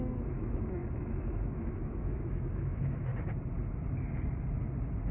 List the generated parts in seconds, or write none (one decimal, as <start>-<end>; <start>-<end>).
0.0-3.1